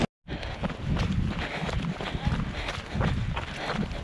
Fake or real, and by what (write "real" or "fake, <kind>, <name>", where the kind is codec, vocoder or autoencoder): real